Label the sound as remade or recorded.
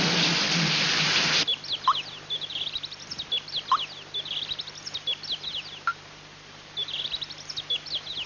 recorded